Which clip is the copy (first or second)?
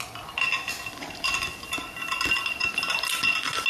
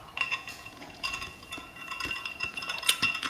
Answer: second